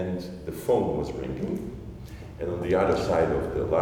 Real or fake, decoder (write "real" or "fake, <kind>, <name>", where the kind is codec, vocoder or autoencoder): real